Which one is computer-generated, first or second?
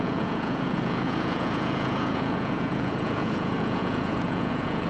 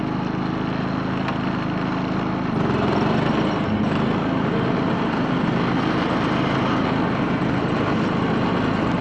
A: first